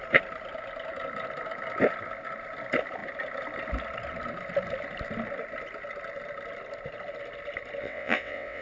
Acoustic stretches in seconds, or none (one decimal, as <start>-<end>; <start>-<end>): 0.0-7.8